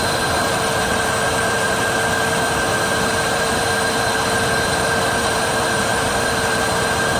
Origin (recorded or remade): remade